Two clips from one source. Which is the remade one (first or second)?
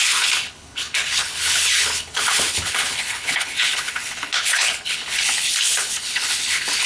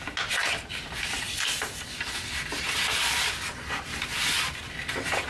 first